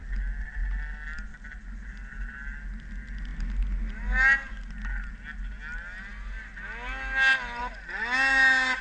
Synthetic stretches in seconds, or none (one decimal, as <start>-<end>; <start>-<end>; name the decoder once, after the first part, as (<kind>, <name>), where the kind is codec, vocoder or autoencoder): none